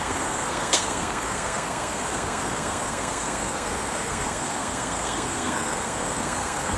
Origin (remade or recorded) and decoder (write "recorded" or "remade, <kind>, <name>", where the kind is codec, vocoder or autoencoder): remade, codec, SNAC